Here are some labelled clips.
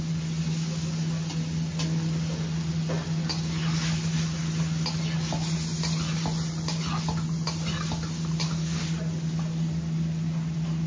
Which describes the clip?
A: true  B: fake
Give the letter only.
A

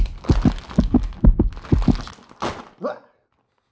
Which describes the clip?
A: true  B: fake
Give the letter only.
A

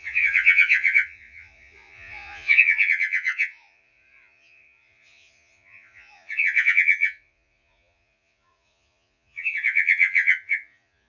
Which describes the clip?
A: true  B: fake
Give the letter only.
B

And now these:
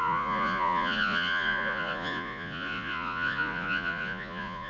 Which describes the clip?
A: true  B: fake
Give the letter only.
B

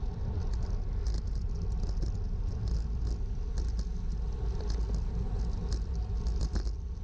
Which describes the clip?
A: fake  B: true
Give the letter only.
B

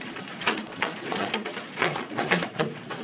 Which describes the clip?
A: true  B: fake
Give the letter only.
B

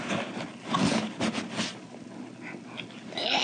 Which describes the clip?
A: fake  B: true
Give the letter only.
B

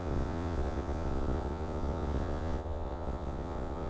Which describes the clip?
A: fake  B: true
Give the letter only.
A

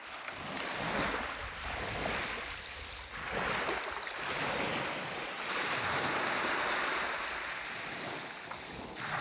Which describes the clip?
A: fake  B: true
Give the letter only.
B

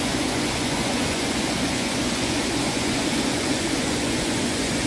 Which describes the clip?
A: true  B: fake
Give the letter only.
B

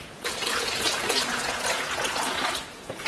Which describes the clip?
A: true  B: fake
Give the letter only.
B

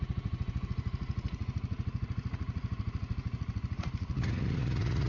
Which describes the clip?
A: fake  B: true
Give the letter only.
A